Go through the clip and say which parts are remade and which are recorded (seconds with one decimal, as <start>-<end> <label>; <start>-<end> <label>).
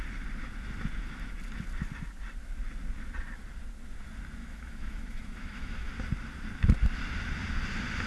0.0-4.4 recorded; 4.4-5.9 remade; 5.9-8.1 recorded